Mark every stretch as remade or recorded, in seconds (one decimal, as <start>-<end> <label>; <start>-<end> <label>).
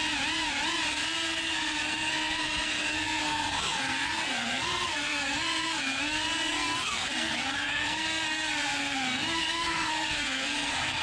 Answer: 0.0-0.9 recorded; 0.9-11.0 remade